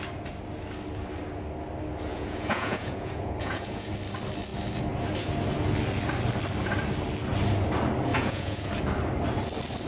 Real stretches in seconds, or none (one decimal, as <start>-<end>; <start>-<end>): 0.0-2.1; 3.9-8.1; 8.7-9.9